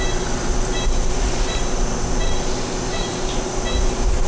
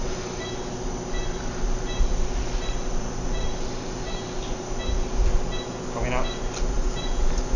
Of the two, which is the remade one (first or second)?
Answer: first